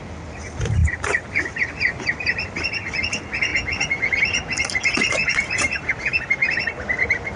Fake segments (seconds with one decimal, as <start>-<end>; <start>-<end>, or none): 0.8-2.6; 5.2-5.9